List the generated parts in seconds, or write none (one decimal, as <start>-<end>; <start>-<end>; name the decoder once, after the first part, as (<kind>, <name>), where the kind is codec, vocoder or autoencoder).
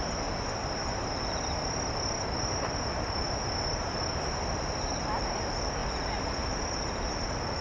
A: none